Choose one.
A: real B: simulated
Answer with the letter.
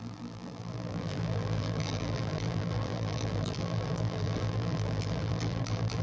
B